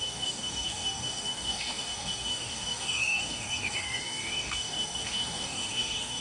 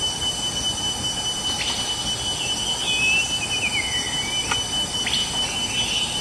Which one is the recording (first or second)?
second